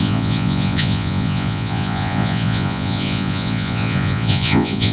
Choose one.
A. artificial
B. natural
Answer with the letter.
A